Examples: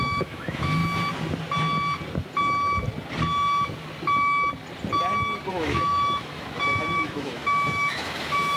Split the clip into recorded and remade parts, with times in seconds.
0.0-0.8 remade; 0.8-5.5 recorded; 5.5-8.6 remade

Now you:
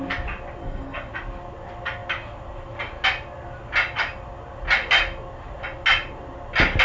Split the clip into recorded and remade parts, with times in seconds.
0.0-0.6 recorded; 0.6-1.1 remade; 1.1-6.8 recorded